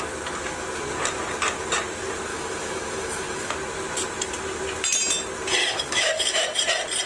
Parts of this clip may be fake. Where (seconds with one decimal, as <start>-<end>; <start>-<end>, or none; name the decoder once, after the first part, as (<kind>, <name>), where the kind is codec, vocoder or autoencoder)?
2.3-3.5 (autoencoder, DAC-VAE); 5.6-6.6